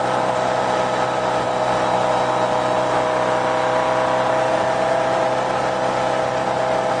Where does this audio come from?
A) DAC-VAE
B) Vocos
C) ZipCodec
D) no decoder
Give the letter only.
D